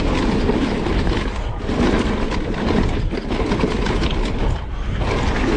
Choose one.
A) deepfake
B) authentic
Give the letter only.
B